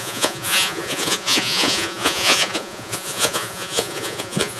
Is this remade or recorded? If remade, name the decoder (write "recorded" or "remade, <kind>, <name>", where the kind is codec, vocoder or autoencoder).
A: remade, vocoder, Vocos